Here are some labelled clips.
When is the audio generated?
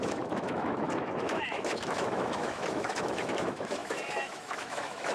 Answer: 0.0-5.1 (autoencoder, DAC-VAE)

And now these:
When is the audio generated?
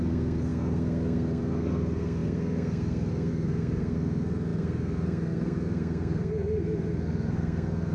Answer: 0.0-7.9 (codec, SNAC)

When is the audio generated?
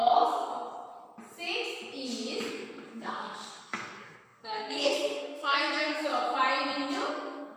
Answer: 0.0-0.5 (codec, SNAC); 2.5-6.1; 7.1-7.6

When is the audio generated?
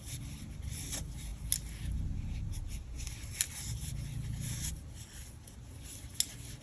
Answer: none